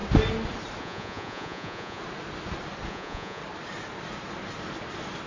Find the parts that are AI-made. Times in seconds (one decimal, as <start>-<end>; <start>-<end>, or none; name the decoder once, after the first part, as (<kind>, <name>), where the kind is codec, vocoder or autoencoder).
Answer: 0.8-2.0 (vocoder, Vocos); 2.9-3.4

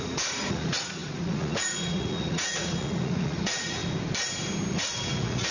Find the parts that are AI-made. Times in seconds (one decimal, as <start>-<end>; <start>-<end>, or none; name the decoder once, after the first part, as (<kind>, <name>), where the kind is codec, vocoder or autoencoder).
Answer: 0.0-3.8 (vocoder, Vocos); 4.7-5.5

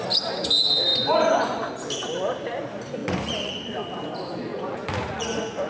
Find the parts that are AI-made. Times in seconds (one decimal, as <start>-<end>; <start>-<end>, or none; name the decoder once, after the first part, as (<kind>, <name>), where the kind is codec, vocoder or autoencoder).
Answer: 0.9-1.7 (vocoder, Vocos); 3.0-3.5; 4.5-5.7

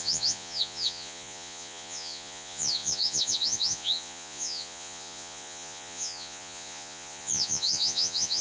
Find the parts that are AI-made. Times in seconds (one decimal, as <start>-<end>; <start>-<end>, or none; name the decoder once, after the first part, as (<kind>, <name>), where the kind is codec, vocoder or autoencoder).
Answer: 0.0-8.4 (vocoder, Vocos)

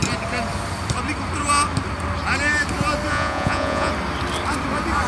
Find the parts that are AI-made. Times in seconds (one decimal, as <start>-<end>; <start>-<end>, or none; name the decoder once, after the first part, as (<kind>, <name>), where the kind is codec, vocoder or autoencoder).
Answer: 3.1-3.9 (vocoder, Vocos)

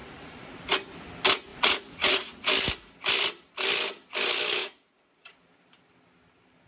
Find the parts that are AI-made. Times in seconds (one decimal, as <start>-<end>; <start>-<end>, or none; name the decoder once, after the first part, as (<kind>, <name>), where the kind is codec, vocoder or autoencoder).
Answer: 0.0-0.6 (vocoder, Vocos); 1.5-2.5; 4.6-5.3

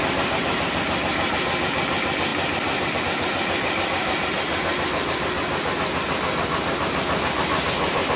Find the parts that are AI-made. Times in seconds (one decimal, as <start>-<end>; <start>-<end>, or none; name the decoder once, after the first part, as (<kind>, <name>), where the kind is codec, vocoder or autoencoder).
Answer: none